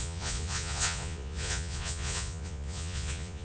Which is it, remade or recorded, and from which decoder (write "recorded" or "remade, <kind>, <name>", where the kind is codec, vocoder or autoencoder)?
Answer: remade, vocoder, Vocos